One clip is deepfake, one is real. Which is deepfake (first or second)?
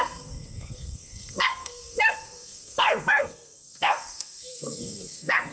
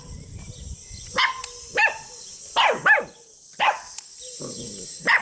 first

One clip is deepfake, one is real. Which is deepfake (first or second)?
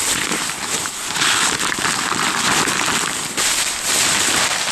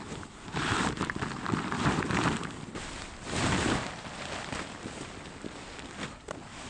second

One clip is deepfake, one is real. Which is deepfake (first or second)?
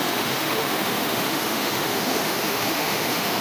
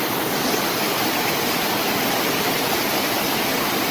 first